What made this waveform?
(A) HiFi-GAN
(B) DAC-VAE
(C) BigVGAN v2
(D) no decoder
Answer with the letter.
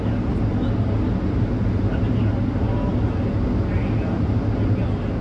D